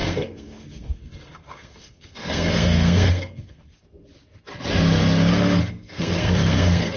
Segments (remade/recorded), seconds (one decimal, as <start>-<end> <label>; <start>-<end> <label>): 0.0-3.7 remade; 3.7-5.3 recorded; 5.3-7.0 remade